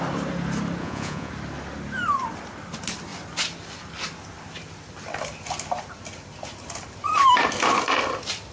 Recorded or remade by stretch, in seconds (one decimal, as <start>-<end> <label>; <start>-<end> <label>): 0.0-0.8 recorded; 0.8-1.3 remade; 1.3-8.5 recorded